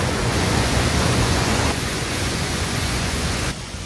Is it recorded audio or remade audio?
remade